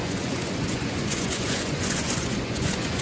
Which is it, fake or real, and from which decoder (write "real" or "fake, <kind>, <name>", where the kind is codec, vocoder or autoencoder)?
fake, vocoder, Vocos